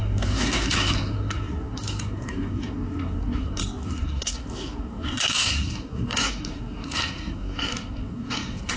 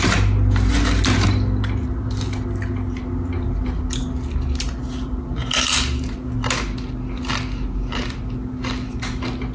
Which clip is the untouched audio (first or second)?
second